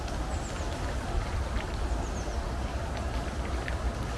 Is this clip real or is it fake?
real